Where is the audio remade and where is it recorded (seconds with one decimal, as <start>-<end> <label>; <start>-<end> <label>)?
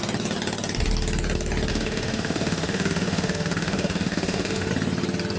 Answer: 0.0-1.7 recorded; 1.7-4.7 remade; 4.7-5.4 recorded